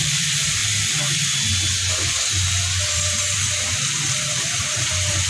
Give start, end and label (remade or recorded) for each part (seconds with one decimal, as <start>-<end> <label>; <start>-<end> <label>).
0.0-0.6 remade; 0.6-2.8 recorded; 2.8-5.3 remade